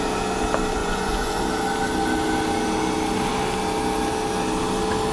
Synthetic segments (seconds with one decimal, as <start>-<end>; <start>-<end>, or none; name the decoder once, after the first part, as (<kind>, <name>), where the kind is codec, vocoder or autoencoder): 0.8-1.4 (vocoder, Vocos)